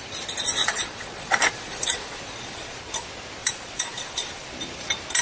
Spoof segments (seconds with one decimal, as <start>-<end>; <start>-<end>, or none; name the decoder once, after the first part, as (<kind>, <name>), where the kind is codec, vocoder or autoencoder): 0.6-2.8 (vocoder, Vocos); 3.4-4.5